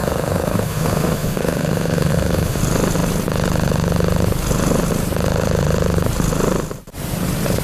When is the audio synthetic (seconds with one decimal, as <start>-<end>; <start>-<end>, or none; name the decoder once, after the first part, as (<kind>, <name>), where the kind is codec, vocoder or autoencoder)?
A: 0.0-2.6 (autoencoder, DAC-VAE)

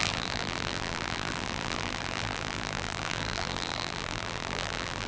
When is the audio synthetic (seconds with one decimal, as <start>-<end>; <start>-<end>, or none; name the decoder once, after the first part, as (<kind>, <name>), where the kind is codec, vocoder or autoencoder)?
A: 0.0-5.1 (vocoder, BigVGAN v2)

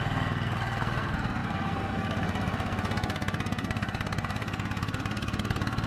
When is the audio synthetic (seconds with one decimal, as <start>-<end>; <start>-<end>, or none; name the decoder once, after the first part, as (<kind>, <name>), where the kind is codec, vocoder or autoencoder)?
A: 0.0-5.9 (codec, SNAC)

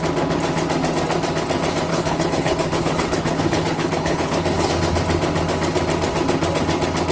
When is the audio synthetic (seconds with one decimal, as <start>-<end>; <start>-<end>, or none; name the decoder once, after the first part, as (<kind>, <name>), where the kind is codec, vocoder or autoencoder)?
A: 1.9-4.7 (codec, HILCodec)

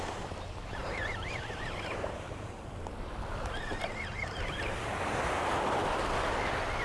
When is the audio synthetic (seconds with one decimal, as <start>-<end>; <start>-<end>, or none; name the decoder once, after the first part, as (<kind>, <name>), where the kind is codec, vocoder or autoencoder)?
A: 0.8-2.6 (vocoder, BigVGAN v2)